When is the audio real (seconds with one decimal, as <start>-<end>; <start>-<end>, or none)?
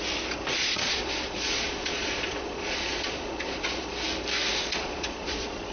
0.0-0.5; 3.9-4.5